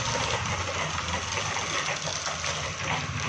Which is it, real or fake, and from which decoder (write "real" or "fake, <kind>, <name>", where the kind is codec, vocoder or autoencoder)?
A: real